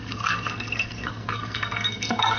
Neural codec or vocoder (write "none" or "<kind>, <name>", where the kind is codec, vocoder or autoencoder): codec, SNAC